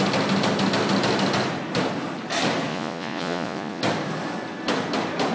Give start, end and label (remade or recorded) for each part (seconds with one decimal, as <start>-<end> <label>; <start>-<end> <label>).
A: 0.0-2.7 recorded; 2.7-3.8 remade; 3.8-5.3 recorded